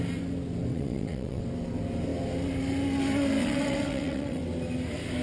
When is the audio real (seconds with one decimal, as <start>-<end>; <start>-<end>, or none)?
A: 0.0-0.7; 1.4-3.4; 4.4-5.2